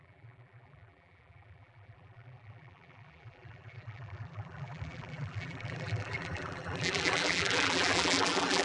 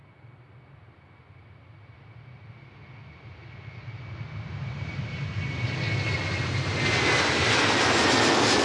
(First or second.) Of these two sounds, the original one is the second